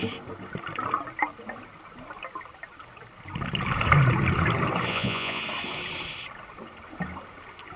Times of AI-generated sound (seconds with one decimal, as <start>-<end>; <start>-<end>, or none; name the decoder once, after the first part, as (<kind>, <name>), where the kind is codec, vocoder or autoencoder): 4.9-5.4 (vocoder, Vocos)